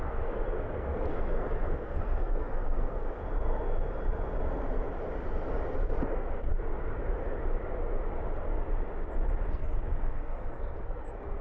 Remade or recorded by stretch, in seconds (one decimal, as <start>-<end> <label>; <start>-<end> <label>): 0.0-3.2 remade; 3.2-6.1 recorded; 6.1-6.5 remade; 6.5-9.5 recorded; 9.5-11.4 remade